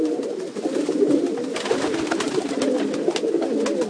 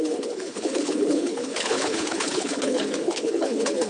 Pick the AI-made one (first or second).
second